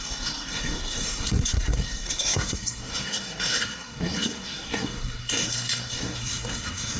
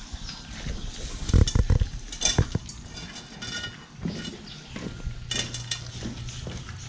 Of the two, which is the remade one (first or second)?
first